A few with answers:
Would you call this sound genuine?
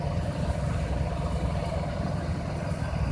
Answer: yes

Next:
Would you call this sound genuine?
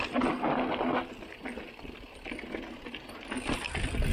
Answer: yes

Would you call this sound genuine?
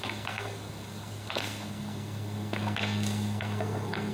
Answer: no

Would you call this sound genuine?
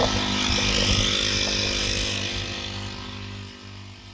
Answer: yes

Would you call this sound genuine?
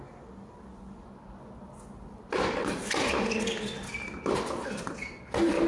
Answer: yes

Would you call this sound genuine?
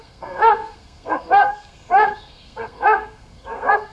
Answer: no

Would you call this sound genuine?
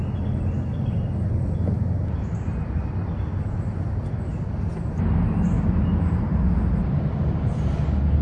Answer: yes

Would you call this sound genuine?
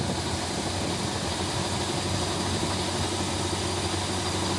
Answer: yes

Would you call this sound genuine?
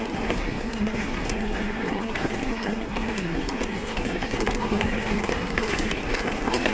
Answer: no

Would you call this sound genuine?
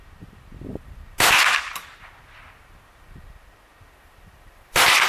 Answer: yes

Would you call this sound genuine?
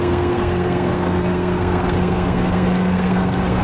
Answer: no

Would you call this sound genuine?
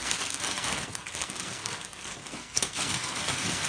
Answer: no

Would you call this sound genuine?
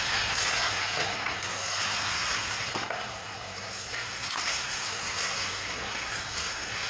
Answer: no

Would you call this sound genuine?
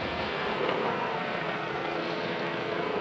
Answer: no